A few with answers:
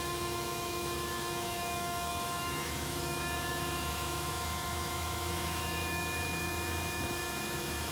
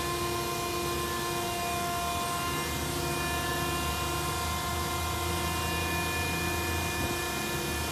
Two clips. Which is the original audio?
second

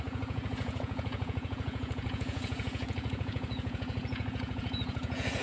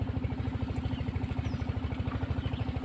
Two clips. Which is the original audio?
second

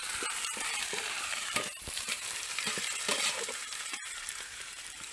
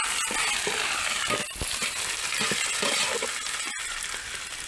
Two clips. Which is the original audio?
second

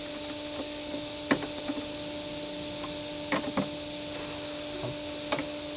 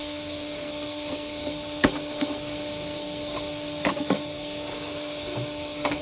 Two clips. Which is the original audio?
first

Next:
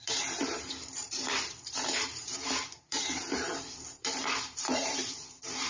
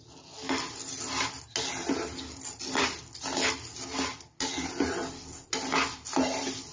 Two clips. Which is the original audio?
second